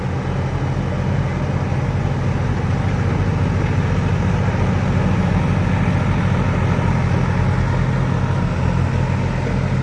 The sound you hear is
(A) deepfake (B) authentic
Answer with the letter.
B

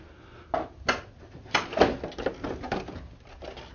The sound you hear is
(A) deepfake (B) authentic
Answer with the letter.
B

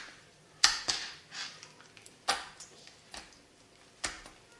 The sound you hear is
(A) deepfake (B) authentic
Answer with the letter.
A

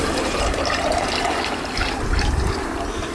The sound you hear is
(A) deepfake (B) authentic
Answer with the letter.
A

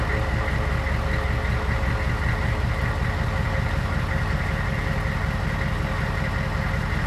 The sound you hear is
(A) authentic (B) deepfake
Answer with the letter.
A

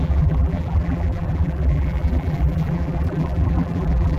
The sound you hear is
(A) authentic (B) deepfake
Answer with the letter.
B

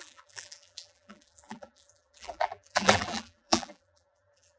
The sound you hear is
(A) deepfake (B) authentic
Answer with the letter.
A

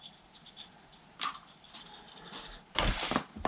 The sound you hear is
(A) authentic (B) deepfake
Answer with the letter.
A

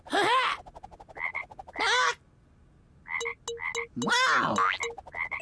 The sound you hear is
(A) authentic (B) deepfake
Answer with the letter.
A